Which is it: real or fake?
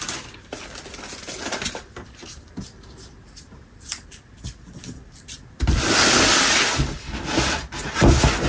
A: real